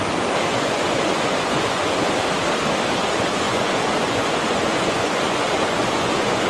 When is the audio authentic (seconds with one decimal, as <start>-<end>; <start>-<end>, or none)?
0.0-0.5; 2.1-3.0